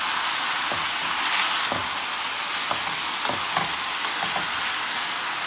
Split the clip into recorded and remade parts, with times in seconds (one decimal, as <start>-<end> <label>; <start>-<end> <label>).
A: 0.0-1.8 recorded; 1.8-4.5 remade; 4.5-5.5 recorded